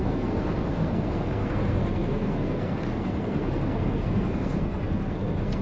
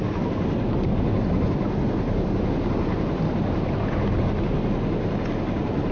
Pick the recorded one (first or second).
second